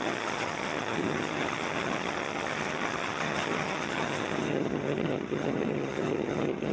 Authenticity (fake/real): fake